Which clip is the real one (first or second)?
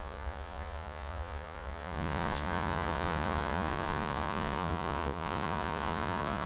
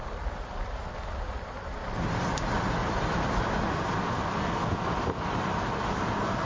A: second